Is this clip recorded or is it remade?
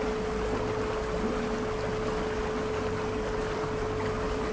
recorded